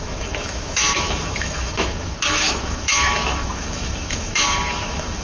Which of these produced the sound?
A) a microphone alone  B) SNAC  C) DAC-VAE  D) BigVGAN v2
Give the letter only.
C